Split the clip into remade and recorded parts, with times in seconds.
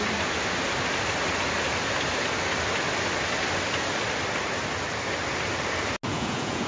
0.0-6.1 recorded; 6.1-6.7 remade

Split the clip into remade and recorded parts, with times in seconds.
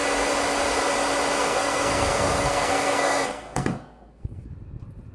0.0-1.4 recorded; 1.4-4.5 remade; 4.5-5.1 recorded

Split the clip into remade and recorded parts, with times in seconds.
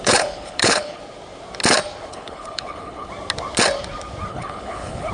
0.0-1.0 remade; 1.0-2.1 recorded; 2.1-3.1 remade; 3.1-4.3 recorded; 4.3-5.1 remade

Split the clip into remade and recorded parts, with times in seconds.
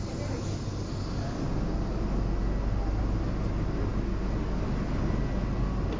0.0-6.0 recorded